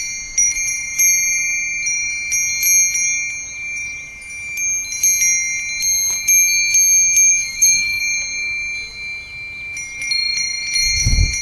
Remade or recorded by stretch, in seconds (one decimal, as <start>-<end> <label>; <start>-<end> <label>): 0.0-7.3 recorded; 7.3-8.0 remade; 8.0-11.4 recorded